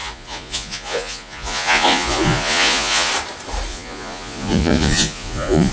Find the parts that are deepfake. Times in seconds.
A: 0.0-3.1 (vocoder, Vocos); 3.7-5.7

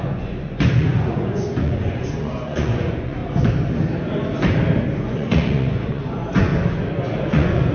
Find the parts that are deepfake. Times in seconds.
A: 0.0-3.2 (vocoder, Vocos); 4.8-6.5; 7.2-7.7

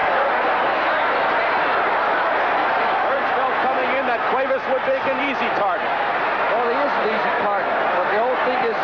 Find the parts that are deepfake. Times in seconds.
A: none

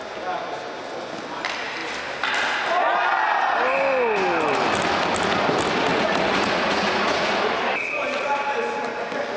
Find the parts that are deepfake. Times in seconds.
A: 5.9-7.3 (vocoder, Vocos)

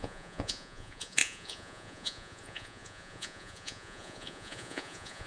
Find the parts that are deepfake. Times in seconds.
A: 0.0-5.3 (vocoder, Vocos)